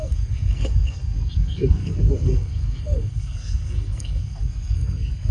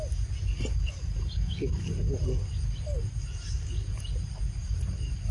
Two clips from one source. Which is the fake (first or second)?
first